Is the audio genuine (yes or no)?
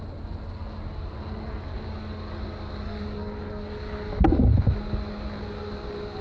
yes